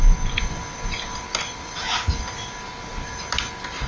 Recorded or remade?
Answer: recorded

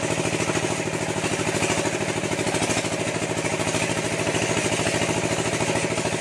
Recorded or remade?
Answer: recorded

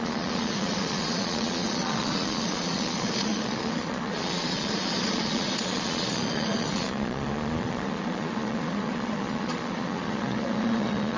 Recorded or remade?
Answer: remade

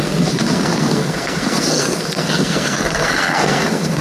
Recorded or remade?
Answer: remade